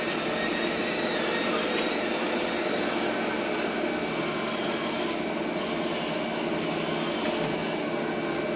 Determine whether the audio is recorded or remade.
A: recorded